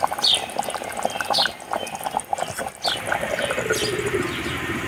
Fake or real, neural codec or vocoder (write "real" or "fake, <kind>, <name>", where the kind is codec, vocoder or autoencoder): real